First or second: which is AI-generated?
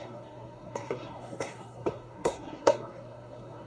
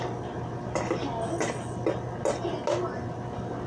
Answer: first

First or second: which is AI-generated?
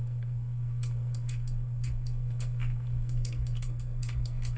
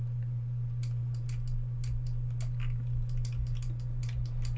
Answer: first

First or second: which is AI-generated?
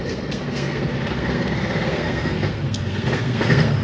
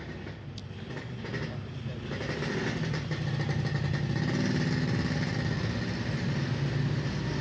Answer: first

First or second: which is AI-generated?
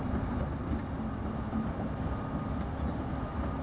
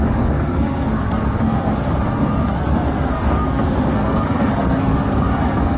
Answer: second